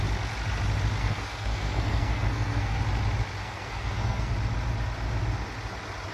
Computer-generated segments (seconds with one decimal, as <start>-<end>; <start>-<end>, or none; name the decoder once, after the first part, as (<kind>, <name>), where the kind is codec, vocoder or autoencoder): 1.0-2.8 (codec, SNAC); 3.4-4.3